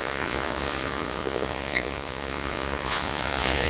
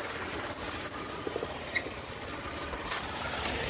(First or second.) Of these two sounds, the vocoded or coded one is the first